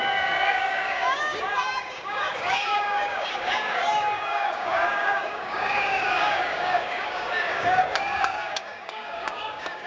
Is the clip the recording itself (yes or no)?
no